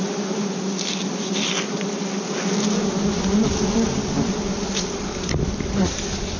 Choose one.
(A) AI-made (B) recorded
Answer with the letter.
B